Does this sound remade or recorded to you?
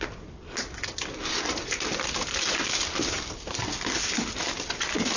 recorded